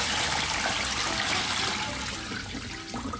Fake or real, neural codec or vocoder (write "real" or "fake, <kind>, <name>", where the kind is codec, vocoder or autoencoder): real